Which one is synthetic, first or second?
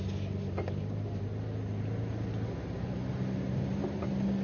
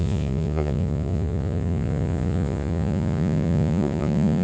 second